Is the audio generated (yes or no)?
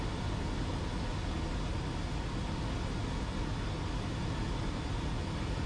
no